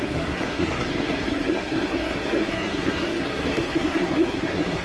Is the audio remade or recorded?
remade